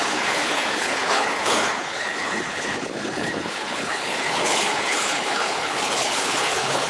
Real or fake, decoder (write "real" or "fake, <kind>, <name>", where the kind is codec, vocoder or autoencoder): fake, codec, HILCodec